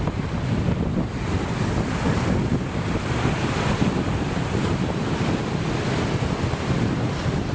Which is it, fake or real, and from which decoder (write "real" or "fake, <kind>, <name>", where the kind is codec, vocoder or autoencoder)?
real